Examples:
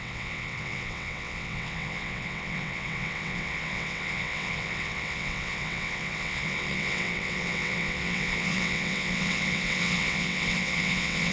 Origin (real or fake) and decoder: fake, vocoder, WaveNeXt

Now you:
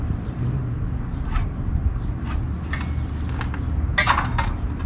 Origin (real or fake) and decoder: real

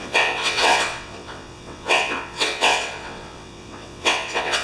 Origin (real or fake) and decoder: fake, vocoder, WaveNeXt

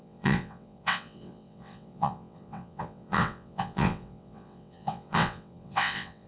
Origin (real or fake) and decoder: fake, vocoder, WaveNeXt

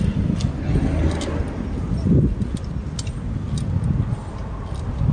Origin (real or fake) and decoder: real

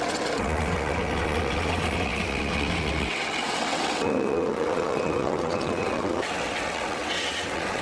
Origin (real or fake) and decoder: fake, vocoder, WaveNeXt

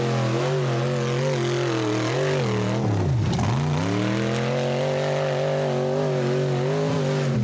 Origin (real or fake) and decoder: real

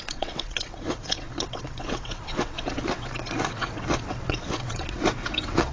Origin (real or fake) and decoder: fake, vocoder, WaveNeXt